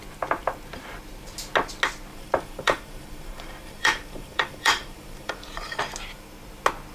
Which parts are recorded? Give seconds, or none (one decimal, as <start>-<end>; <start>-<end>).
0.0-2.1; 5.8-6.9